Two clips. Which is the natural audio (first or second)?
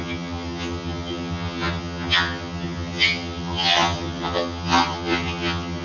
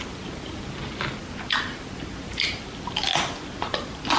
second